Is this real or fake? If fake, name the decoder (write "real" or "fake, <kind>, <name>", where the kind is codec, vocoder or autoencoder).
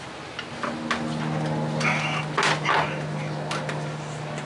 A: real